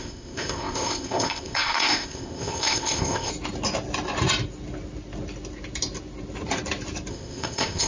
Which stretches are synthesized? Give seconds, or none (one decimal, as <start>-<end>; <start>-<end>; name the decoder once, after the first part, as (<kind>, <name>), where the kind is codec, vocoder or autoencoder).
0.0-3.3 (codec, ZipCodec); 7.1-7.9